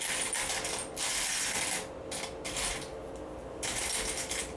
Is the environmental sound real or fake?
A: fake